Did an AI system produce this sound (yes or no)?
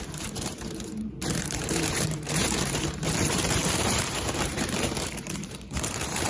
yes